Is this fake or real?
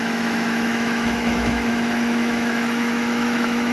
fake